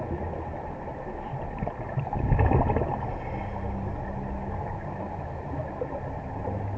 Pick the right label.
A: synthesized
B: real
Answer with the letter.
B